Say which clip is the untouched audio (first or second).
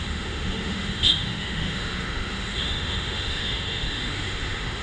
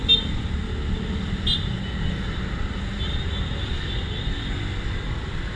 second